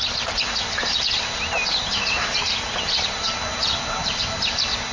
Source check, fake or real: real